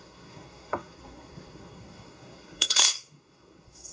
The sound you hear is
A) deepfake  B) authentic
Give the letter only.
A